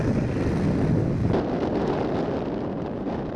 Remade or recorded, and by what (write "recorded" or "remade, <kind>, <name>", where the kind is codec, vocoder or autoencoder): recorded